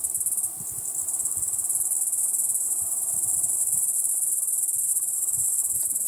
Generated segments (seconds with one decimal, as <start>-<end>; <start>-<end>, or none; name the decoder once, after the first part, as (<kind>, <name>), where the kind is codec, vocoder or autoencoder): 3.6-4.1 (vocoder, BigVGAN v2); 4.9-6.1